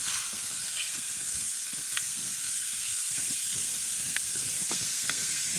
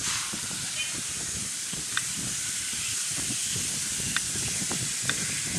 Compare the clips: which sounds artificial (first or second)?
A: first